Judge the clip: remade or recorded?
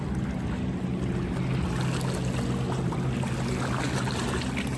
recorded